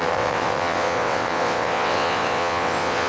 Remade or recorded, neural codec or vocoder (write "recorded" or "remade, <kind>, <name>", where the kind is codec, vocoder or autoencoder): remade, vocoder, WaveNeXt